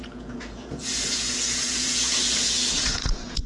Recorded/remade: remade